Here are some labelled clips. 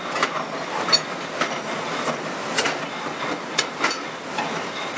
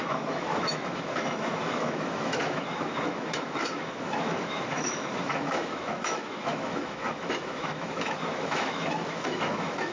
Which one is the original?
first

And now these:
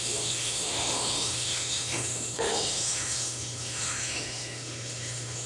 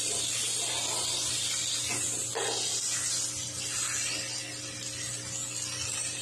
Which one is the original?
second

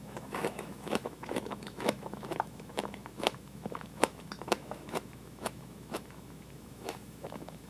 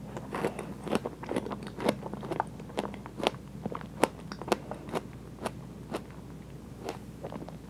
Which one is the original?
second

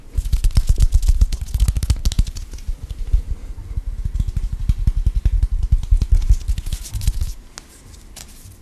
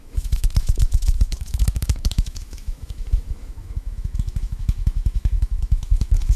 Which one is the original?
first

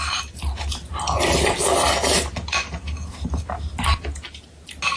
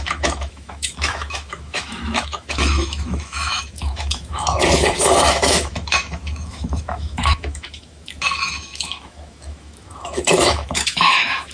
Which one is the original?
first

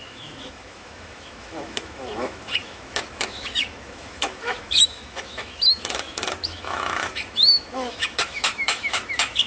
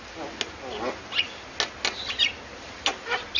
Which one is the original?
second